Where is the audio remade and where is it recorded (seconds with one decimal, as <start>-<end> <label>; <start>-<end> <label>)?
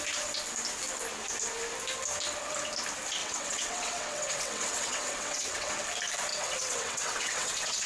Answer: 0.0-3.2 recorded; 3.2-5.7 remade; 5.7-6.3 recorded; 6.3-7.9 remade